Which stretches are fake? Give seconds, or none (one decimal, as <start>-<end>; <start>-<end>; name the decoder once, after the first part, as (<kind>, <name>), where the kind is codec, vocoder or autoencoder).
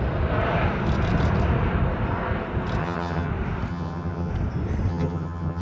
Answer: 2.8-3.3 (vocoder, HiFi-GAN); 3.7-4.3; 4.9-5.6